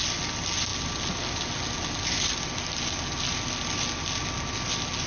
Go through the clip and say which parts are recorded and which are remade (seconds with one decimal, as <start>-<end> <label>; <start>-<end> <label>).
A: 0.0-5.1 recorded